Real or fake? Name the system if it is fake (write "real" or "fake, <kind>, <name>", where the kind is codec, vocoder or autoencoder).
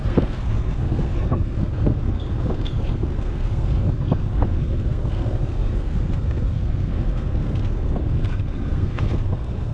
fake, codec, SNAC